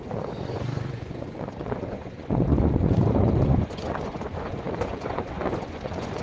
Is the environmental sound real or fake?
fake